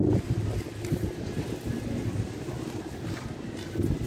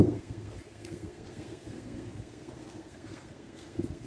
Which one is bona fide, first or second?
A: first